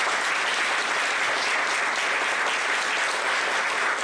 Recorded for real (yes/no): yes